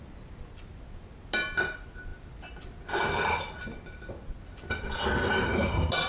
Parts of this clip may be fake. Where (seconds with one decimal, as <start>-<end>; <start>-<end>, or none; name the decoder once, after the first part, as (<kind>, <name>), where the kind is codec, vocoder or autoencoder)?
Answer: none